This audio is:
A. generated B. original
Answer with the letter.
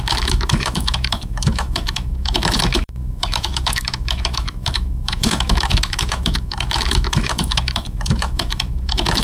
A